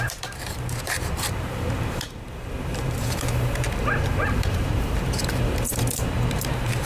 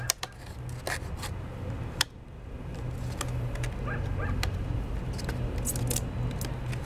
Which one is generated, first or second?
first